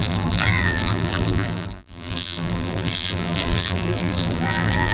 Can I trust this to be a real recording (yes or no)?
no